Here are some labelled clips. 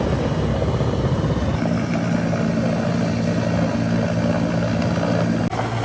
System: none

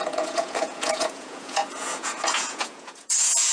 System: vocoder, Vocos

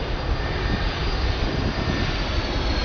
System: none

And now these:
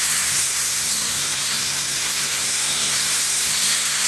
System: codec, SNAC